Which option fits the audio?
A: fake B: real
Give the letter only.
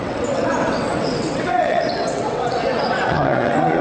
A